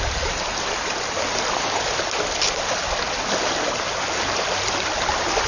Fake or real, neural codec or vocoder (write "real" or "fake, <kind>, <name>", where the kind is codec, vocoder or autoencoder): real